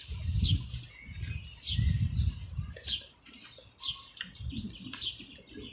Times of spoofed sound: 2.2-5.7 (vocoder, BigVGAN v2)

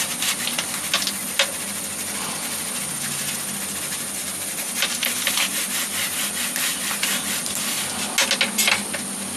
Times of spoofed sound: 4.5-5.5 (vocoder, BigVGAN v2)